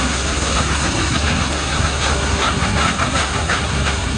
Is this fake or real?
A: fake